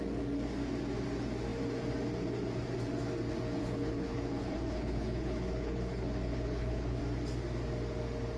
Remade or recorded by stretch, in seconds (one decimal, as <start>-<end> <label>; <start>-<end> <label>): 0.0-3.6 recorded; 3.6-7.0 remade; 7.0-8.4 recorded